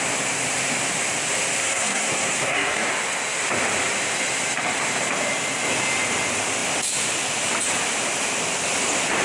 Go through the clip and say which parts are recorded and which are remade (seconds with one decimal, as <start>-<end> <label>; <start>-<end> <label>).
0.0-1.6 recorded; 1.6-2.9 remade; 2.9-9.2 recorded